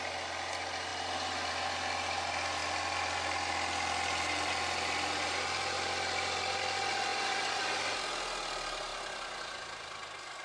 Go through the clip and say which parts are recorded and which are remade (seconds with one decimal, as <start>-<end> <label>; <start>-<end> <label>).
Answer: 0.0-10.4 recorded